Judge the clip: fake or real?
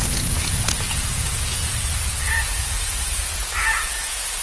fake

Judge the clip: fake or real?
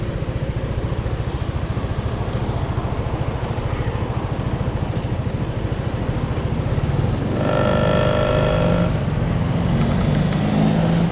real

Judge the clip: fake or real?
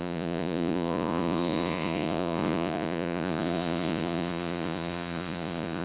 fake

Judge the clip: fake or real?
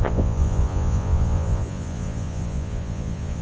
fake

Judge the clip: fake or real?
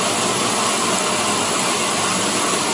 real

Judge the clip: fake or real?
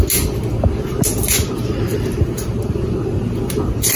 real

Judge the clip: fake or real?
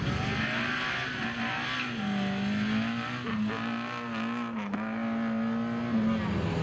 real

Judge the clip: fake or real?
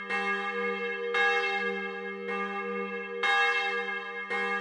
real